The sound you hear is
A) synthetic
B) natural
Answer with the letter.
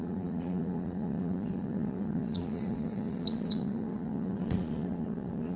A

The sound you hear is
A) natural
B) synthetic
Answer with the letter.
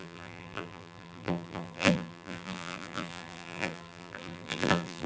B